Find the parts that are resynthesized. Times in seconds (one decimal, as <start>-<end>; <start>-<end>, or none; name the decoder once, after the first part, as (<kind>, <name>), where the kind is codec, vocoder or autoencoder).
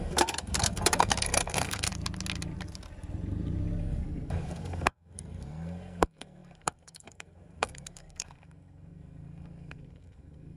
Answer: 0.0-1.9 (codec, SNAC); 3.8-10.6